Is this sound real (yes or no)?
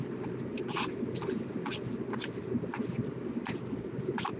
yes